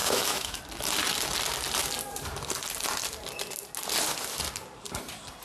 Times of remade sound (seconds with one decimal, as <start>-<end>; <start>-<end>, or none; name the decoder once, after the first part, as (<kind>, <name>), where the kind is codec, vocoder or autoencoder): 0.0-0.6 (autoencoder, DAC-VAE)